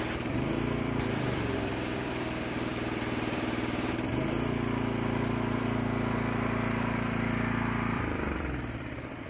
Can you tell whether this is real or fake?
fake